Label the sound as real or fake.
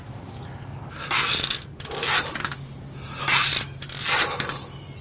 real